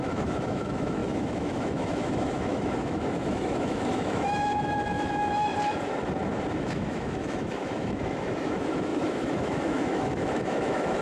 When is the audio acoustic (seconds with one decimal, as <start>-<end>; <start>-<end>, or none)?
5.5-6.5